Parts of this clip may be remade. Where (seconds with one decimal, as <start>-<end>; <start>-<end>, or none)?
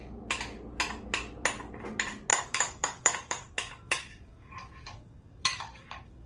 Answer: 2.3-6.3